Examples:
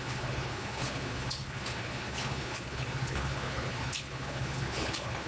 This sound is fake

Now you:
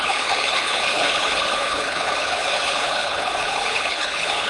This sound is fake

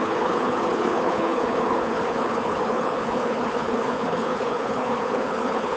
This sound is fake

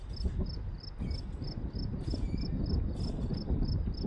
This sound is real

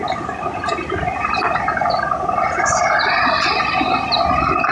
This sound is real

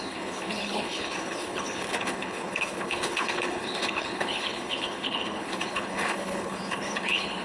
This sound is fake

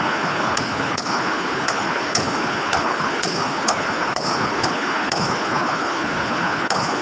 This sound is fake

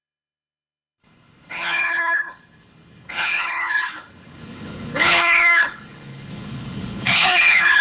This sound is fake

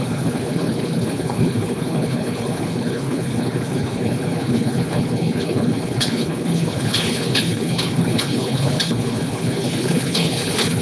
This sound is fake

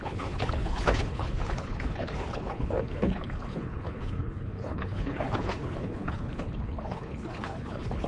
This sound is fake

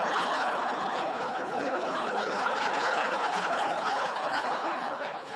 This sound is fake